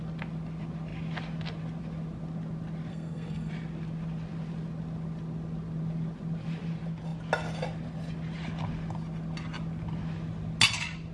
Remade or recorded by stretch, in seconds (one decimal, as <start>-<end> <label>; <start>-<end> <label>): 0.0-2.9 recorded; 2.9-3.5 remade; 3.5-11.1 recorded